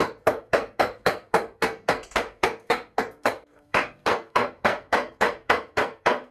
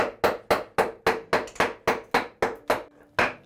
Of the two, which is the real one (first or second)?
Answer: second